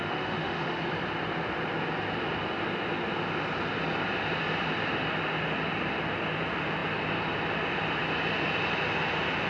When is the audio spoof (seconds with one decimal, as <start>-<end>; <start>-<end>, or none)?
0.0-0.8

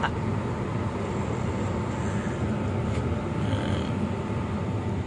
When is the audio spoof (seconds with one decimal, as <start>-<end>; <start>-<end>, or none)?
none